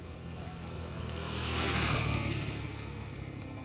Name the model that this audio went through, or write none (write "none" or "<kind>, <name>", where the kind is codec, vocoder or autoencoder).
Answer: codec, SNAC